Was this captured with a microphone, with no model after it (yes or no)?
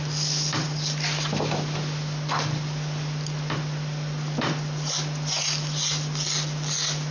yes